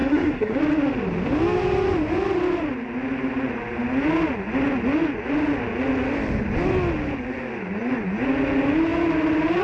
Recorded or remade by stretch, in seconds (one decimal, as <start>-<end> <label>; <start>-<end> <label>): 0.0-0.6 remade; 0.6-9.6 recorded